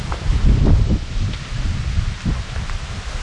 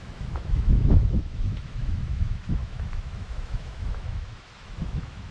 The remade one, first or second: second